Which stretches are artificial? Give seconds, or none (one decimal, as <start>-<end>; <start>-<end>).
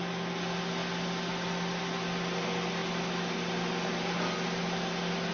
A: none